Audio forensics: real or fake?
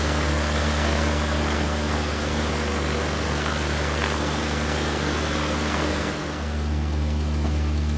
fake